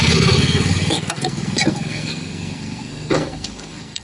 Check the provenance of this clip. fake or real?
fake